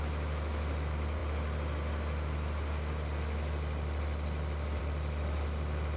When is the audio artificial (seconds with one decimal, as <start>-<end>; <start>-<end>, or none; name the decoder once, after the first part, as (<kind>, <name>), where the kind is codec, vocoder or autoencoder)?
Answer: none